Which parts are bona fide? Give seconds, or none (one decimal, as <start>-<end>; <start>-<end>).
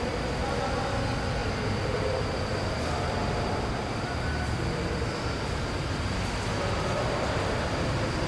0.0-8.3